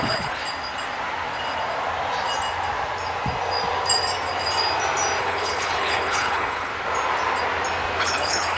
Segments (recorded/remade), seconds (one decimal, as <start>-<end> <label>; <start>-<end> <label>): 0.0-0.4 remade; 0.4-5.2 recorded; 5.2-6.7 remade; 6.7-8.0 recorded; 8.0-8.6 remade